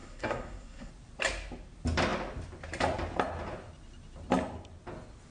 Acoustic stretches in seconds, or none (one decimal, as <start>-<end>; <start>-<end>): 0.9-5.3